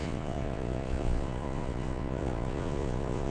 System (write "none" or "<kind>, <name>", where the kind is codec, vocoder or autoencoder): vocoder, Vocos